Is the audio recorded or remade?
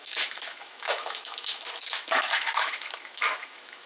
remade